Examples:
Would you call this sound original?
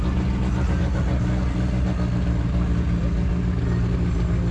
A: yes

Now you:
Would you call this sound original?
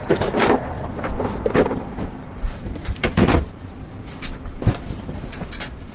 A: no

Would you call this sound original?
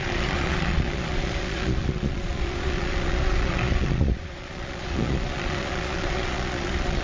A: no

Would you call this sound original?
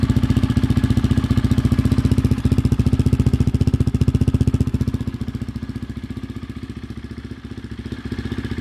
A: yes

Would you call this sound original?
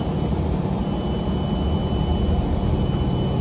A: yes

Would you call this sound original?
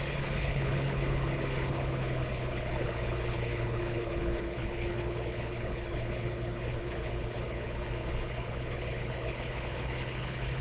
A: no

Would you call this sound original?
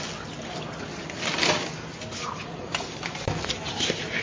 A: yes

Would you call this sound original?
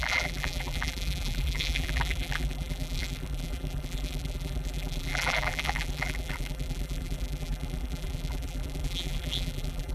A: no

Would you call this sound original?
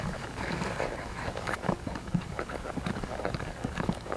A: no